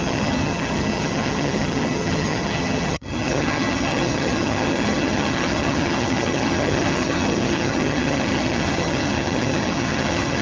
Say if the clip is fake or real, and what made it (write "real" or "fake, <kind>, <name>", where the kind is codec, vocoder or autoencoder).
fake, vocoder, HiFi-GAN